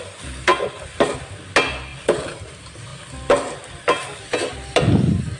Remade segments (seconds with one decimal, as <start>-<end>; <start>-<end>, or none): 1.9-2.5

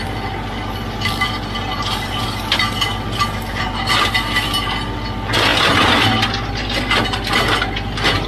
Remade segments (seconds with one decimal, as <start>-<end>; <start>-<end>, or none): none